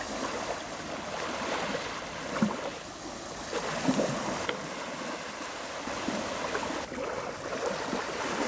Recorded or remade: recorded